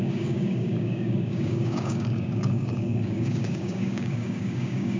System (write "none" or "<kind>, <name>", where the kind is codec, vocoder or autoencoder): codec, DAC